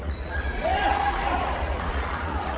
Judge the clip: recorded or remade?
remade